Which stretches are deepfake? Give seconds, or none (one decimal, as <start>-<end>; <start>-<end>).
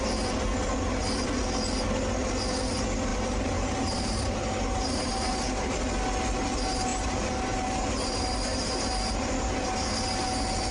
3.1-5.8; 6.9-9.9